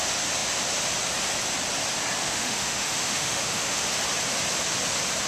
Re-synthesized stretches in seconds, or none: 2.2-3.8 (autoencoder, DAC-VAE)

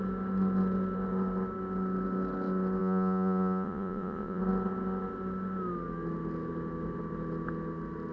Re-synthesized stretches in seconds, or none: 2.8-4.4 (vocoder, Vocos)

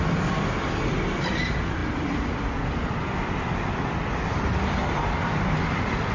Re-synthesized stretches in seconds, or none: 0.0-6.1 (vocoder, BigVGAN v2)

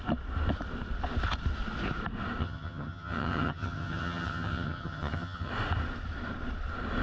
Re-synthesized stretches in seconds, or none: 2.4-5.5 (vocoder, HiFi-GAN)

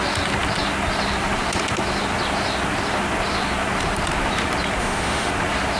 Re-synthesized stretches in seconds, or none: 4.8-5.3 (autoencoder, DAC-VAE)

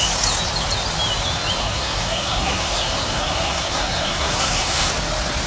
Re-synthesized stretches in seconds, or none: 1.6-4.9 (codec, SNAC)